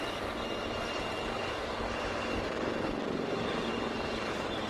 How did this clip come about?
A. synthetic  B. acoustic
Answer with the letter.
B